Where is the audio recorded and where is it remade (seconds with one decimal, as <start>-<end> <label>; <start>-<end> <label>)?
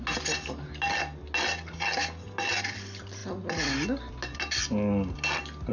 0.0-5.7 recorded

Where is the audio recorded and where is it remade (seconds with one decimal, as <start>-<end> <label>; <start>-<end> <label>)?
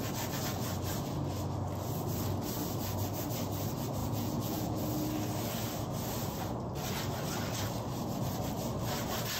0.0-4.0 recorded; 4.0-4.8 remade; 4.8-9.4 recorded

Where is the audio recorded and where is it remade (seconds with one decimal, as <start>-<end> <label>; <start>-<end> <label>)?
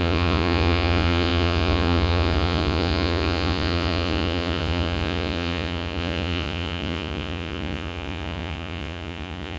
0.0-9.6 remade